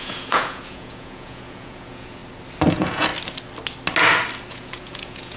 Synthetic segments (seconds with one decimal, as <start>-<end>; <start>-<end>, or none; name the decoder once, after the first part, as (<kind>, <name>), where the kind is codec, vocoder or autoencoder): 0.0-2.2 (vocoder, Vocos); 2.7-3.1; 4.5-5.4